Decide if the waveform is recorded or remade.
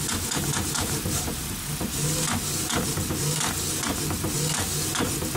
recorded